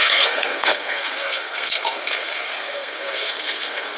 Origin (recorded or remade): remade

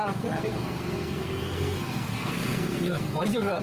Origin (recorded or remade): remade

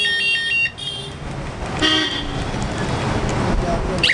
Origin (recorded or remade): recorded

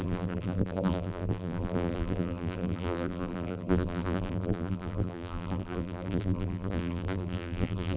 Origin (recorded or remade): remade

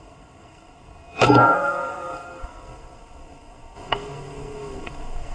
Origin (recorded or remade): remade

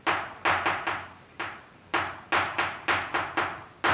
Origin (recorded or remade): recorded